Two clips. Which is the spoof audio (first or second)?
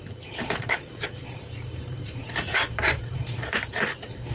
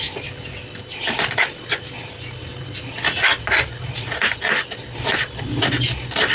first